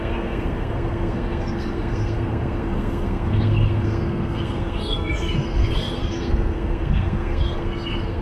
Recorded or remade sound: remade